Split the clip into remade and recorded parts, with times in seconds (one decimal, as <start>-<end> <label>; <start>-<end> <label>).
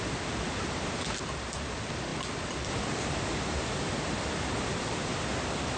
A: 0.0-5.8 recorded